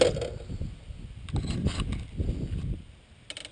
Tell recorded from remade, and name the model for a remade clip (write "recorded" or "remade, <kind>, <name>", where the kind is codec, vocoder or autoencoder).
recorded